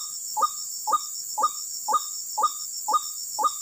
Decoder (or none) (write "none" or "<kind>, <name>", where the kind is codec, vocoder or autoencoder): none